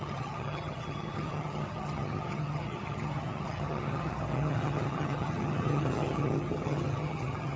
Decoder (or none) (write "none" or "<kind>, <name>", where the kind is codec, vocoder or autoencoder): vocoder, HiFi-GAN